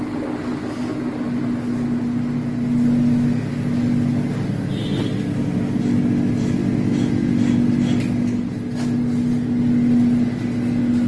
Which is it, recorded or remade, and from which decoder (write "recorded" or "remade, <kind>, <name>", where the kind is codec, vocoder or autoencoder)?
recorded